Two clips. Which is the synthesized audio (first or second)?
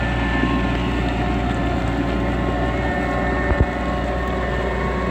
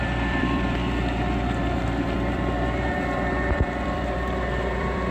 second